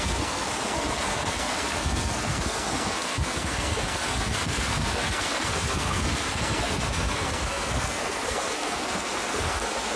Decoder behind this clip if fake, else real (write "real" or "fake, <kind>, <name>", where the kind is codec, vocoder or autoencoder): fake, codec, SNAC